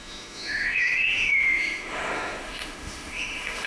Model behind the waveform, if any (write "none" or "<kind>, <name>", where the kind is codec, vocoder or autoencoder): autoencoder, DAC-VAE